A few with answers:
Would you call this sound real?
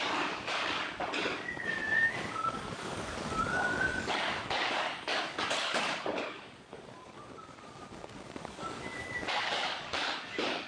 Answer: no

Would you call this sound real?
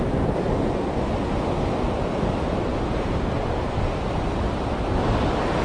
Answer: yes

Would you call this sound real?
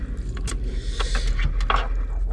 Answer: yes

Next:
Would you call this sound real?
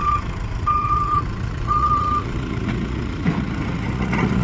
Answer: no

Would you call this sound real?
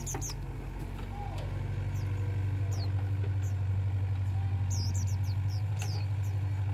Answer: yes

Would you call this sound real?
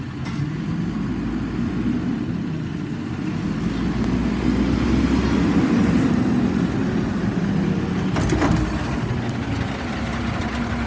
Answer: yes